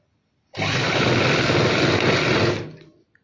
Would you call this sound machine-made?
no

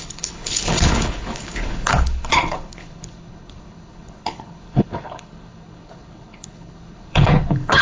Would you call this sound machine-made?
yes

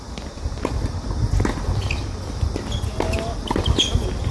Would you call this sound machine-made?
no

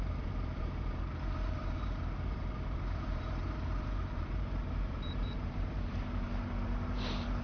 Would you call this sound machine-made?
yes